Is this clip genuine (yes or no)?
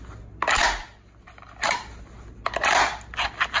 yes